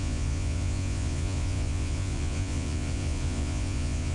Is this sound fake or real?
fake